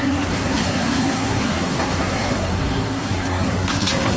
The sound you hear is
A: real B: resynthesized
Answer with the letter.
B